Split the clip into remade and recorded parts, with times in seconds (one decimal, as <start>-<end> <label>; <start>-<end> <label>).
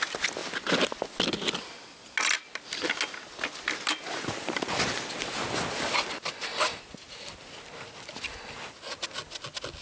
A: 0.0-6.5 recorded; 6.5-7.4 remade; 7.4-9.8 recorded